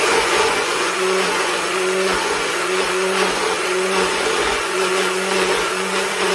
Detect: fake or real fake